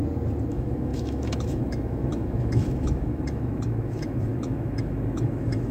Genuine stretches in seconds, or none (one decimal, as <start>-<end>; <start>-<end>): 0.0-0.5